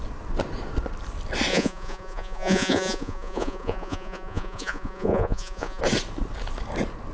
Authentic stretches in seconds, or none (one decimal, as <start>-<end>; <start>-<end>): 0.0-1.5; 5.8-7.1